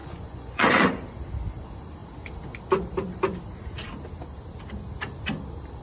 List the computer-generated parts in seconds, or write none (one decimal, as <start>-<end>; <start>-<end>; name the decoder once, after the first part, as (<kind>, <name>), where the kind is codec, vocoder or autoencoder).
0.0-1.1 (vocoder, Vocos)